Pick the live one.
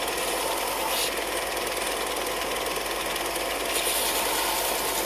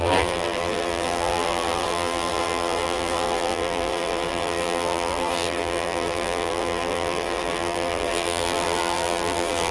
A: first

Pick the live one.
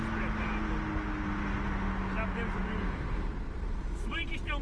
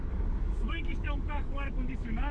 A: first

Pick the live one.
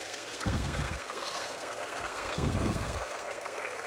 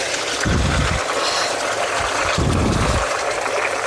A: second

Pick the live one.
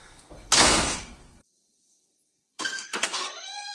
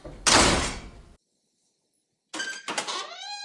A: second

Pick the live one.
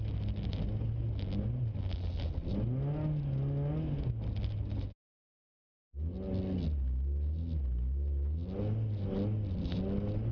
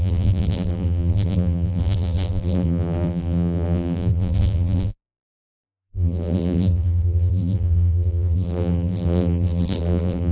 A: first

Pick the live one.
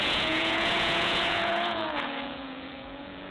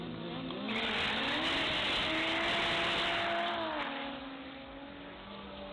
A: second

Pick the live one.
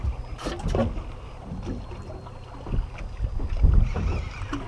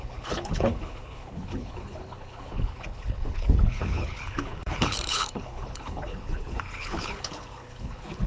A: first